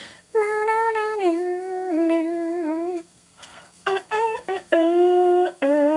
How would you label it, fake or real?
fake